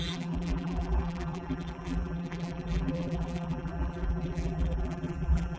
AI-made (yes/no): yes